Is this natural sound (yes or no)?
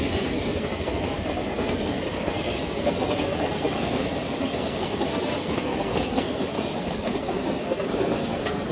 no